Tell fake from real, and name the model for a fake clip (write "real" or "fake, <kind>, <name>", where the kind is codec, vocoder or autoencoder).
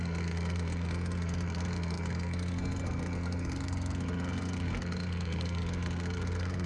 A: fake, codec, SNAC